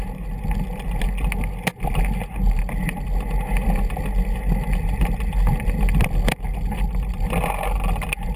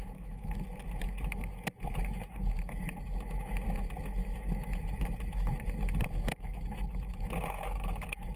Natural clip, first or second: first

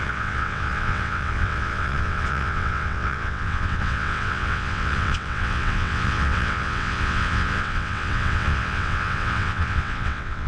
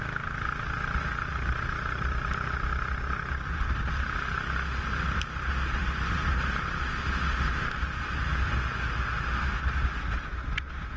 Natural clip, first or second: second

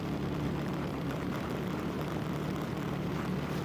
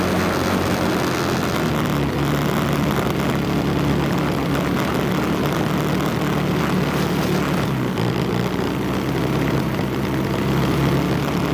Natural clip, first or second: second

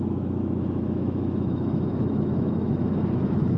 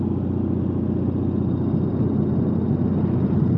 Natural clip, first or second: second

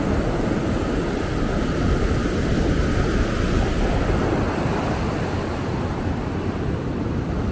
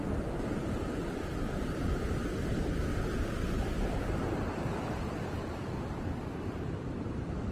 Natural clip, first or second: first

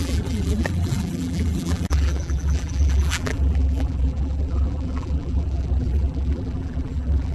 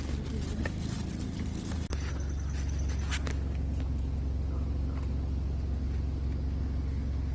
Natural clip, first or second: second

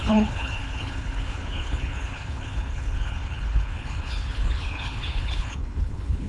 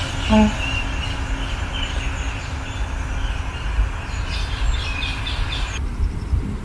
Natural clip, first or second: second